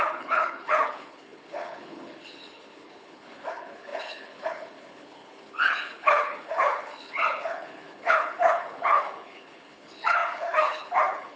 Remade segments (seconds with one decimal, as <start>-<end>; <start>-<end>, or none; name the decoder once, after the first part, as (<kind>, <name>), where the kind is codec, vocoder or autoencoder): 0.0-11.4 (codec, HILCodec)